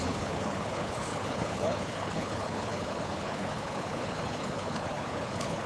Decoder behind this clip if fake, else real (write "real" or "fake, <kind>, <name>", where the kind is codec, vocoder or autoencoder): fake, codec, HILCodec